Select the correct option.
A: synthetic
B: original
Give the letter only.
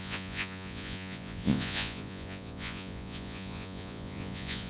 A